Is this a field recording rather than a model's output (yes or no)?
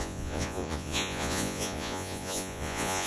no